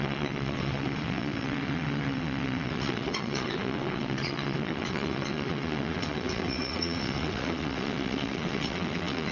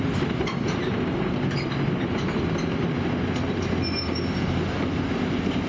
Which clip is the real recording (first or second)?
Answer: second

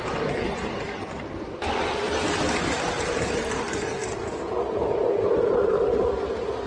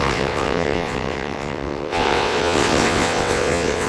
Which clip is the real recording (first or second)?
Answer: first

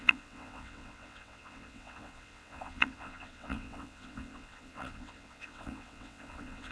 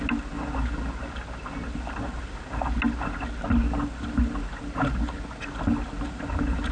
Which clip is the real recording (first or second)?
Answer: second